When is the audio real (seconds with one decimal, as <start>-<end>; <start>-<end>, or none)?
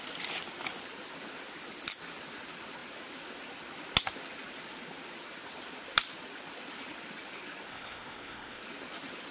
0.0-7.7; 8.6-9.3